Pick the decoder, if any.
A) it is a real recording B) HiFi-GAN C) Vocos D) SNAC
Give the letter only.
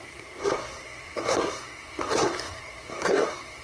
D